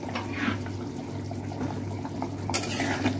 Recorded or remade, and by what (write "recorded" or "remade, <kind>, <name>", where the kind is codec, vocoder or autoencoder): recorded